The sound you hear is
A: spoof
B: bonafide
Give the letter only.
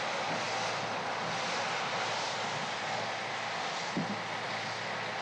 B